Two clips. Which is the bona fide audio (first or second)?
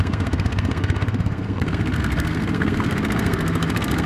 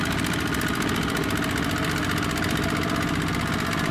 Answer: second